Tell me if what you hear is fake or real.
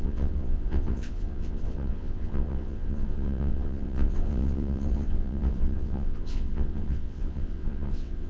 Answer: fake